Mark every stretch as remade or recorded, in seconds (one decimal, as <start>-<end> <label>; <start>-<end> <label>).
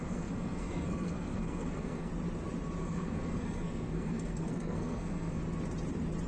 0.0-2.1 remade; 2.1-2.8 recorded; 2.8-5.4 remade; 5.4-6.3 recorded